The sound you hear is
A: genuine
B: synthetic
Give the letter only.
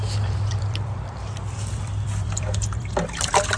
B